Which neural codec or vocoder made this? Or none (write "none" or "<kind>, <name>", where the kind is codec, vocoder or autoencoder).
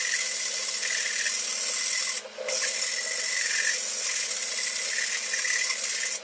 none